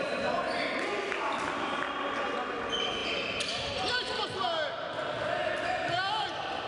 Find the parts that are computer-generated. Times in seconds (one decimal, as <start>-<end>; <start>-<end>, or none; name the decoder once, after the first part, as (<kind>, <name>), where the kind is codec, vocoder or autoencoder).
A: none